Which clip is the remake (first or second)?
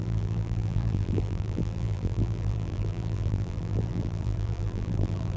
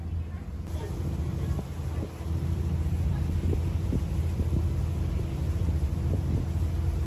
first